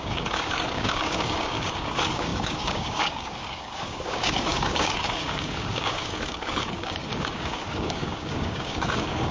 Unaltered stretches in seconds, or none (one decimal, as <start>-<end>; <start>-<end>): none